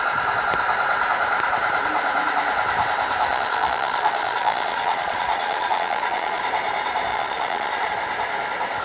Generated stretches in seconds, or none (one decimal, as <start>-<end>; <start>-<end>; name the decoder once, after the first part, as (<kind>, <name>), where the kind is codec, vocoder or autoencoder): 3.3-6.4 (vocoder, Vocos); 7.1-7.9

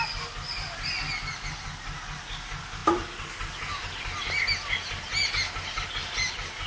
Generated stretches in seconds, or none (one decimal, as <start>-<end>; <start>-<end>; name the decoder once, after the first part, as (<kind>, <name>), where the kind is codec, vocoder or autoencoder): none

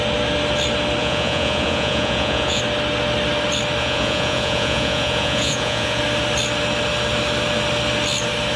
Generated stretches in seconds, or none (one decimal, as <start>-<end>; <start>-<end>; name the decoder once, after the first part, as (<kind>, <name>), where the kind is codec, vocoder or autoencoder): 1.0-2.6 (vocoder, Vocos); 3.8-6.0